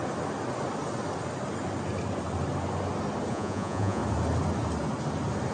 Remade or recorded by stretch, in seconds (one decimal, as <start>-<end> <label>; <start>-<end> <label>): 0.0-3.3 recorded; 3.3-4.0 remade; 4.0-5.5 recorded

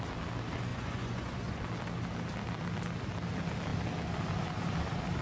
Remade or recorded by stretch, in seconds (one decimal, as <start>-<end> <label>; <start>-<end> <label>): 0.0-0.7 recorded; 0.7-1.6 remade; 1.6-5.2 recorded

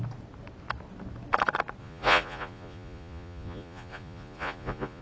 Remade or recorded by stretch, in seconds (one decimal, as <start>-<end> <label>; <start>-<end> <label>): 0.0-1.8 recorded; 1.8-5.0 remade

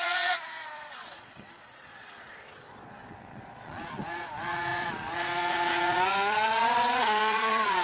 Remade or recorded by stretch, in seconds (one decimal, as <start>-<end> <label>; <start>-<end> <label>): 0.0-7.8 remade

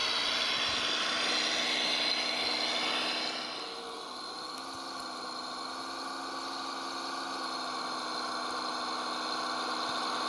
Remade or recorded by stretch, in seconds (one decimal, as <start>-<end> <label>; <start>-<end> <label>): 0.0-10.3 recorded